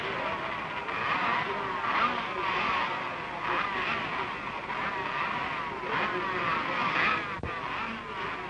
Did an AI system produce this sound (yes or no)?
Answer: no